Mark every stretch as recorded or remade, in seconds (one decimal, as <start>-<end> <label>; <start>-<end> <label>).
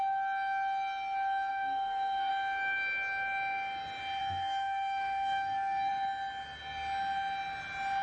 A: 0.0-1.5 recorded; 1.5-2.3 remade; 2.3-4.2 recorded; 4.2-5.9 remade; 5.9-8.0 recorded